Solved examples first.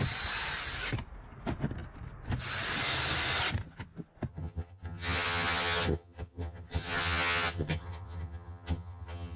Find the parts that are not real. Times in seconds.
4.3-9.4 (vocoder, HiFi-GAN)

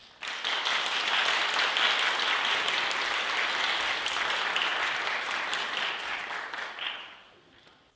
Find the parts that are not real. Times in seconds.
none

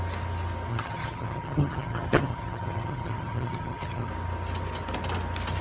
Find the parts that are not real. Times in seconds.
0.7-4.1 (vocoder, HiFi-GAN)

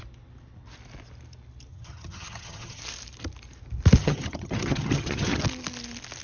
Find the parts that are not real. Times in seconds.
1.7-2.8 (vocoder, HiFi-GAN); 4.0-5.4

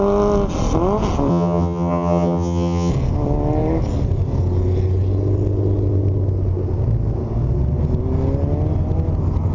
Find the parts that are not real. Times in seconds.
1.3-2.9 (vocoder, HiFi-GAN)

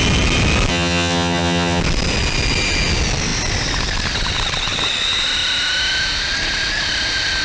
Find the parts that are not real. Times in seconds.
0.7-1.8 (vocoder, HiFi-GAN)